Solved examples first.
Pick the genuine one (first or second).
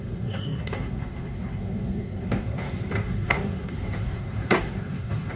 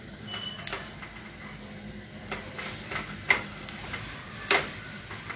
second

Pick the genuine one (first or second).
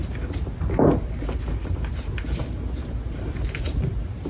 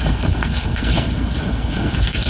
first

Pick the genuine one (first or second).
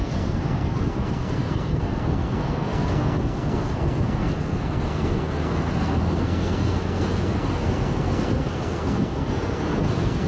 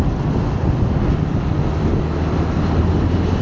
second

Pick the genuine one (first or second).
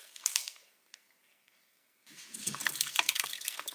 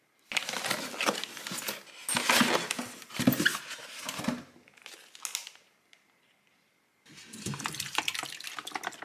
second